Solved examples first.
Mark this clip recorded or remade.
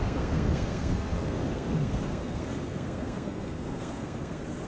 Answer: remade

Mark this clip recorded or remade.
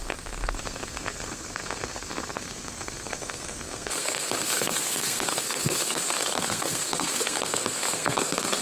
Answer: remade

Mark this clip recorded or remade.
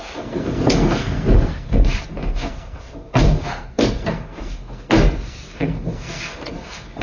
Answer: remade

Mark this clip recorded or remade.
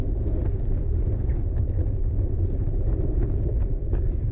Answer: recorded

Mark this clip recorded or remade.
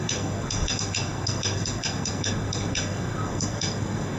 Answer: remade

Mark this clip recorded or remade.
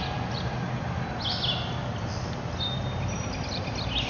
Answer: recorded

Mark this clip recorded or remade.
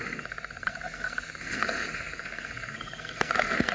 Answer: remade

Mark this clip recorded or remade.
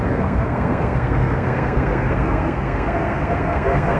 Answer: remade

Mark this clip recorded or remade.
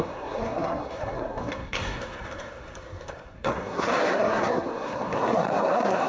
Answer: remade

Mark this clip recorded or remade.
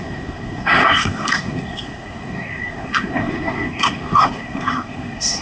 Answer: remade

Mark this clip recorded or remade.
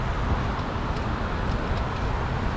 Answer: recorded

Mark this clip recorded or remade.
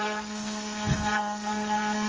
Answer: remade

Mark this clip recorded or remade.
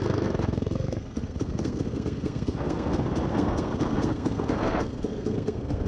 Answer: remade